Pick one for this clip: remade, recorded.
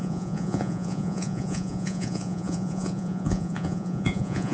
remade